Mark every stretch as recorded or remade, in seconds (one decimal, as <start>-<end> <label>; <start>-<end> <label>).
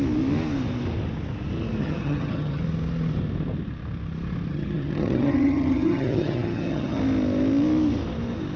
0.0-1.8 recorded; 1.8-2.6 remade; 2.6-4.5 recorded; 4.5-7.0 remade; 7.0-8.6 recorded